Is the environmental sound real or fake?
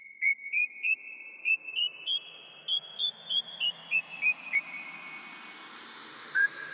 real